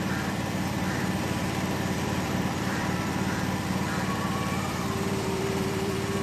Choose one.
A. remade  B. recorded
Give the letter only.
A